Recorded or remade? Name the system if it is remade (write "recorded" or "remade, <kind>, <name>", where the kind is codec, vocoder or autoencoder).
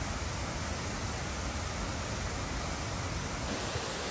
recorded